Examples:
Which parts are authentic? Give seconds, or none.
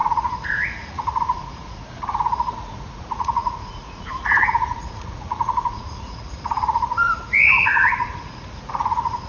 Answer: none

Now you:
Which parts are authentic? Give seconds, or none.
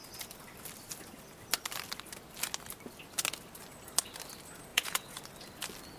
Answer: 0.0-4.7; 5.2-6.0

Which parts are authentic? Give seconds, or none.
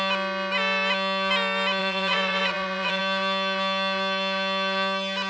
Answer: 0.0-1.8; 3.0-5.3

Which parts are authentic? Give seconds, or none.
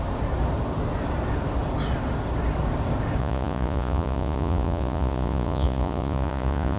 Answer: 0.0-3.2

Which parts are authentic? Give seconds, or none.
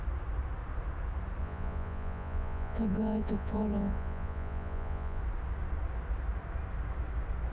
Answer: 0.0-1.4; 5.2-7.5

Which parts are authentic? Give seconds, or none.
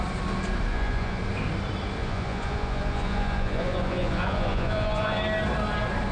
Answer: 0.0-0.7; 1.2-2.0; 5.2-6.1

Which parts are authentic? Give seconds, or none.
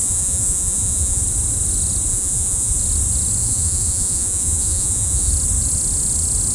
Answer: 1.2-2.1; 2.8-3.4; 5.3-6.5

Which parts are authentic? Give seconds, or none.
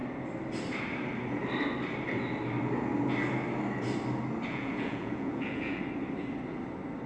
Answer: 0.0-4.5; 5.8-7.1